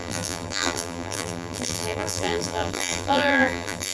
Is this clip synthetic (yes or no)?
yes